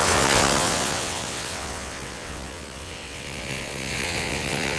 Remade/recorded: remade